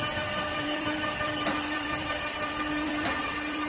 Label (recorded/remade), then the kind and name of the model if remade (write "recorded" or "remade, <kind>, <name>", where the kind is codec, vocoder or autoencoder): remade, vocoder, BigVGAN v2